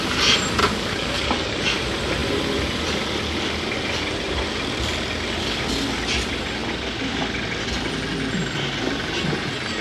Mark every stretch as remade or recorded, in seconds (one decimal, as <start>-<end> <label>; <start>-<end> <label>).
0.0-0.6 recorded; 0.6-1.6 remade; 1.6-9.8 recorded